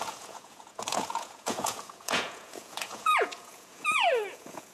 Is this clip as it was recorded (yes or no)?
no